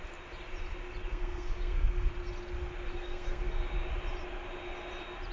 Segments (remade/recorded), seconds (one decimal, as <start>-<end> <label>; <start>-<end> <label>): 0.0-1.1 recorded; 1.1-2.1 remade; 2.1-2.9 recorded; 2.9-3.6 remade; 3.6-5.3 recorded